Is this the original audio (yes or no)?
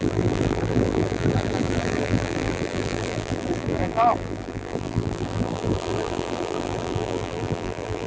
no